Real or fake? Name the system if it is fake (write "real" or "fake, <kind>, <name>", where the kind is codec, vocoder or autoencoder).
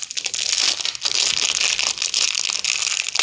real